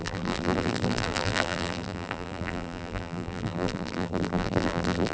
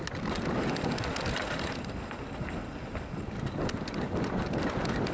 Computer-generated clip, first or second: first